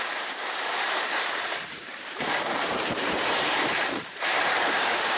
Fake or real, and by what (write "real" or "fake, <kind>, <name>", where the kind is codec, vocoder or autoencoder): fake, vocoder, BigVGAN v2